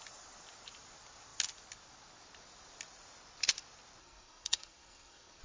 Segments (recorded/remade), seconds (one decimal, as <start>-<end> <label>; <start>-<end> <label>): 0.0-4.0 recorded; 4.0-5.4 remade